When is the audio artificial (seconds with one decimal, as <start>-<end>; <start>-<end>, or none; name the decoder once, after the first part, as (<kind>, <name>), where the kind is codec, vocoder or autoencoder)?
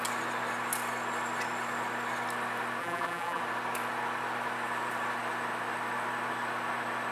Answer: 2.8-3.4 (vocoder, BigVGAN v2)